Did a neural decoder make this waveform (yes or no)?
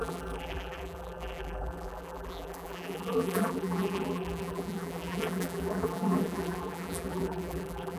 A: yes